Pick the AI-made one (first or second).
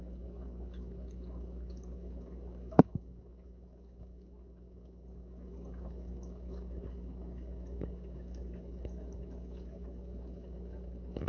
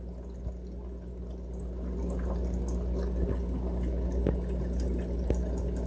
first